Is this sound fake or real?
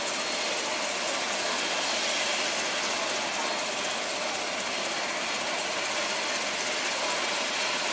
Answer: real